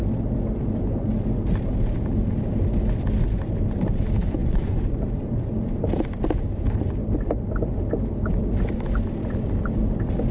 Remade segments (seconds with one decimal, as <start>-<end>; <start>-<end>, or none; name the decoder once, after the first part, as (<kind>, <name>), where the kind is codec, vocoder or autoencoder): 4.4-5.3 (vocoder, Vocos)